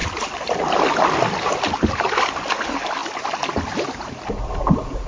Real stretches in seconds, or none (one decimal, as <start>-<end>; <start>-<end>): 0.0-5.1